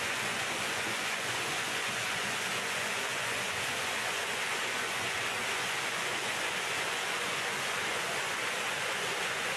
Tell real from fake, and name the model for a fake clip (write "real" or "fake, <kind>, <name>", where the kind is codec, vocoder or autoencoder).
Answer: fake, vocoder, Vocos